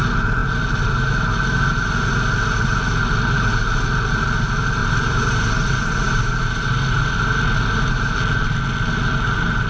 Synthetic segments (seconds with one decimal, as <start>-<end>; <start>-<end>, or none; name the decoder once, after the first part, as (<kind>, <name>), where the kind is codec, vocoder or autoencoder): 4.8-6.7 (vocoder, BigVGAN v2)

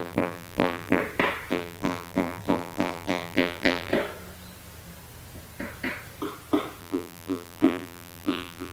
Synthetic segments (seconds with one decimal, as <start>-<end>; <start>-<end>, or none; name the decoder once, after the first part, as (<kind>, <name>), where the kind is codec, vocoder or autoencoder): 0.0-1.0 (vocoder, BigVGAN v2); 1.5-3.9; 6.8-8.7

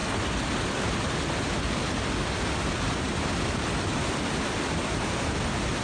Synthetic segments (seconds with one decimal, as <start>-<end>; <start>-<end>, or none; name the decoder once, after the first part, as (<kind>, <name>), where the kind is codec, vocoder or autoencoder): none

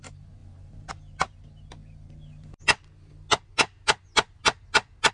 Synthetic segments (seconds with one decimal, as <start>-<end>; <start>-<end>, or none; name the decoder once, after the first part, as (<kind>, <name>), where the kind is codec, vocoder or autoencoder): 0.4-0.9 (vocoder, BigVGAN v2)

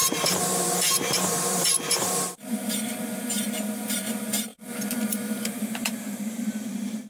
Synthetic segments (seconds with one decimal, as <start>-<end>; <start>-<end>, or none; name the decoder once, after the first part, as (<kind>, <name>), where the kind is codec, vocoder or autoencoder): 0.0-7.1 (vocoder, BigVGAN v2)

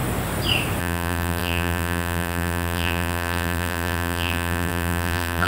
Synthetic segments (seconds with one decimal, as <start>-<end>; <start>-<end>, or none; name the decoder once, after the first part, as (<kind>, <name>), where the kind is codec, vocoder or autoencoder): 0.8-5.5 (vocoder, BigVGAN v2)

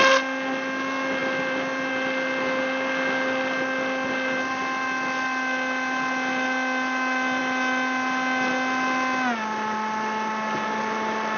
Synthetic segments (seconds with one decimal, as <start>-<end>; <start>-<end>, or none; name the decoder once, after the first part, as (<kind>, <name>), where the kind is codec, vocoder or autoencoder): none